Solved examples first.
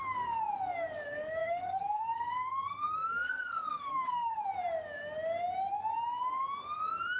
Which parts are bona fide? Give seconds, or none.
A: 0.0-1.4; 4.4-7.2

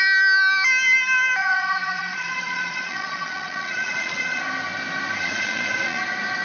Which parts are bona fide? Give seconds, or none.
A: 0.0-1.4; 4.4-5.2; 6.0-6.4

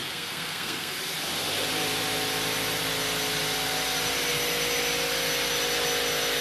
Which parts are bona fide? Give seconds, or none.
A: 1.0-6.4